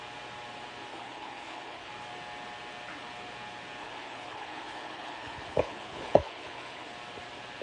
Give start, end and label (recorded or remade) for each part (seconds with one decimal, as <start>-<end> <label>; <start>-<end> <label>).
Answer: 0.0-0.9 recorded; 0.9-1.9 remade; 1.9-3.8 recorded; 3.8-6.9 remade; 6.9-7.6 recorded